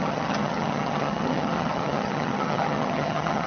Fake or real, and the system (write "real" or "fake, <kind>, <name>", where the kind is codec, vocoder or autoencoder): fake, vocoder, HiFi-GAN